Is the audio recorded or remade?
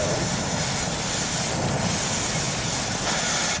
recorded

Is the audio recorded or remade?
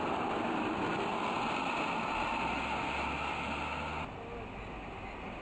recorded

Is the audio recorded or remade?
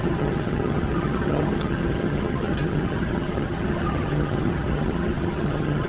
remade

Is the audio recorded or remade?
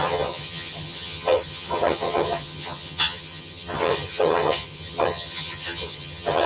remade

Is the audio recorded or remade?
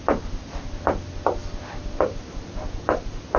recorded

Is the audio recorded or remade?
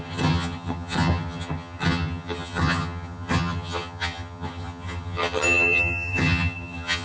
remade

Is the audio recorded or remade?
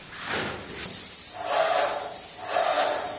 recorded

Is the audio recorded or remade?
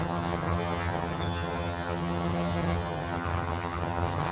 remade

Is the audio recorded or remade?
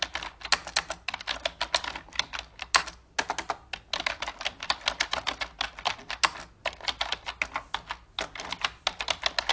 recorded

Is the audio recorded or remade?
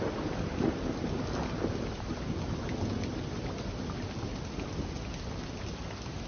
recorded